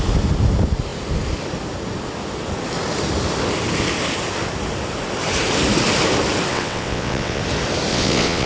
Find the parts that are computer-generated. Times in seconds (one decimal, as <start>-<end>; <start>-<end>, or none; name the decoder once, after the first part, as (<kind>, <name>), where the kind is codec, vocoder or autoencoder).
6.5-7.4 (vocoder, WaveNeXt); 7.9-8.5